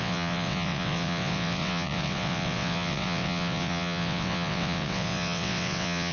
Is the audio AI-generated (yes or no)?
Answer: yes